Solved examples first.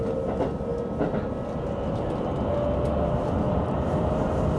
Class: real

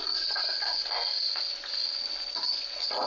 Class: real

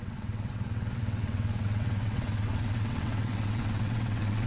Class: fake